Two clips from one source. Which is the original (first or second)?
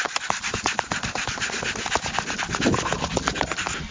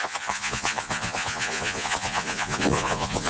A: first